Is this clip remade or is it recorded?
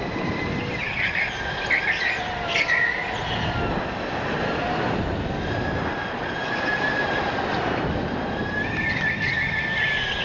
recorded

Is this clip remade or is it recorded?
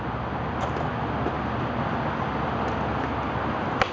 recorded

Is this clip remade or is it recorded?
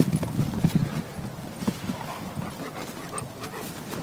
recorded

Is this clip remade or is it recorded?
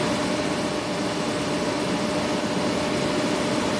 recorded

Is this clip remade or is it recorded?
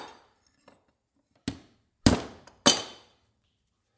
recorded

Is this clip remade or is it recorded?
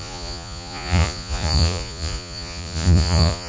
remade